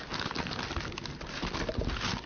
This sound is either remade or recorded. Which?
recorded